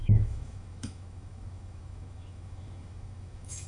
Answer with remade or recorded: remade